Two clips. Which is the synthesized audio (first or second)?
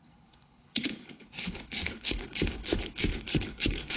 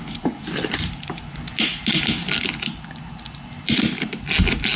first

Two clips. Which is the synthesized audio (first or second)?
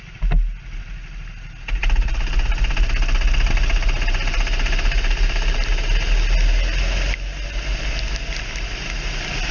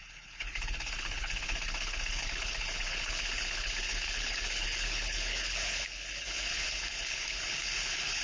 second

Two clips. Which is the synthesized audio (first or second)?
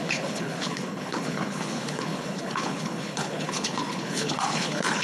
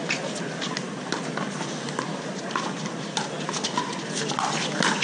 first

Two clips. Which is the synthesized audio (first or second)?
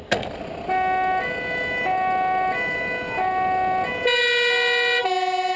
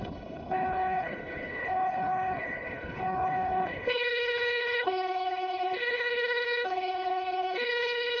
second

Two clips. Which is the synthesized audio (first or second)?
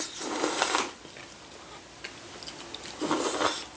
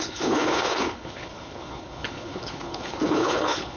second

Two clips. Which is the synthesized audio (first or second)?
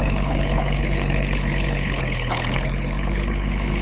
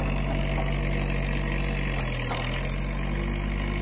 first